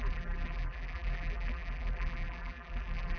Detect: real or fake fake